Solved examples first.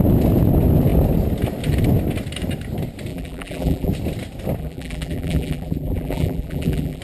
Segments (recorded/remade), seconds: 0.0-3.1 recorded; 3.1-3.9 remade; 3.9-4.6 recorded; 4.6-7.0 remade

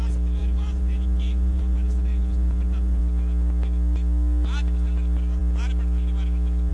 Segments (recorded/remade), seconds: 0.0-0.4 recorded; 0.4-3.0 remade; 3.0-6.7 recorded

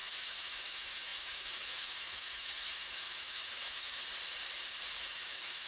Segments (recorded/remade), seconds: 0.0-4.0 remade; 4.0-5.0 recorded; 5.0-5.7 remade

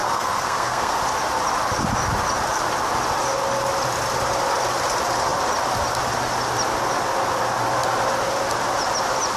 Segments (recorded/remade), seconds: 0.0-1.0 remade; 1.0-9.4 recorded

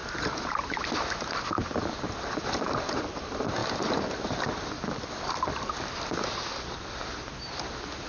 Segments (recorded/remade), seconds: 0.0-2.9 recorded; 2.9-8.1 remade

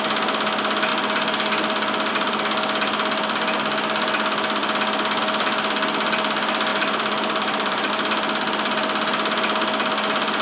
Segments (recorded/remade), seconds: 0.0-6.7 recorded; 6.7-7.9 remade; 7.9-10.4 recorded